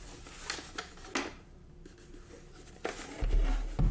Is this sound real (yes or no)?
yes